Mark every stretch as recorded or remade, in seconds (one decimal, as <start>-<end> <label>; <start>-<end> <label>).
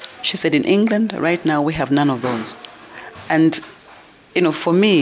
0.0-5.0 recorded